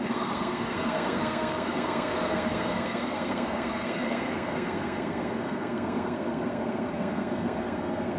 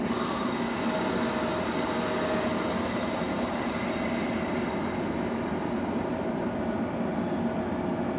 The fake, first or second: first